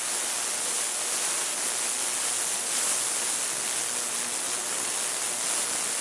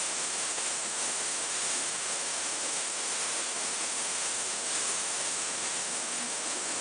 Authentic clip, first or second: first